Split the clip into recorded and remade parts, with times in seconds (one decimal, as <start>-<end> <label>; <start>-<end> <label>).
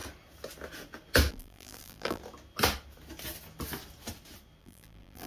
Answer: 0.0-1.3 recorded; 1.3-2.2 remade; 2.2-4.6 recorded; 4.6-5.3 remade